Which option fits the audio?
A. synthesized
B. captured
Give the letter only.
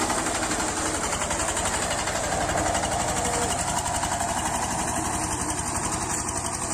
B